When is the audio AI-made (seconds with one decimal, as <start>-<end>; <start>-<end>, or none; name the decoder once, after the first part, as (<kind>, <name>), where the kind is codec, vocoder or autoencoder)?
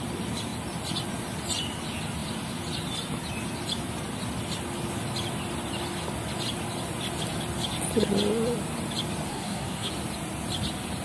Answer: 9.3-9.9 (codec, SNAC)